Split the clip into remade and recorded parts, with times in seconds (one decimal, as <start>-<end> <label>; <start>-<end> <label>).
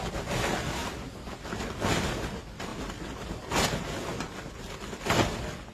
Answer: 0.0-5.7 recorded